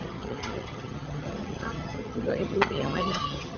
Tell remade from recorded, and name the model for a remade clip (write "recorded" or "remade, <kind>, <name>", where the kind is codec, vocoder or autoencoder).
remade, vocoder, HiFi-GAN